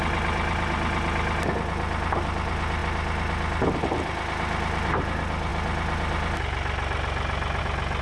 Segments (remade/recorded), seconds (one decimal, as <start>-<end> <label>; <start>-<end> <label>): 0.0-8.0 recorded